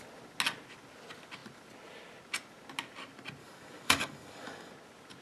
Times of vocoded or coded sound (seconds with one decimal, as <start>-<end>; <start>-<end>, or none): 3.4-4.7